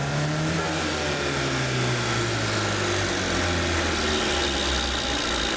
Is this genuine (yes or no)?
yes